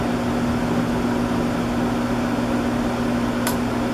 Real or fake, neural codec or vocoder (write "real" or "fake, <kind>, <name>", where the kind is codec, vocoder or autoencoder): real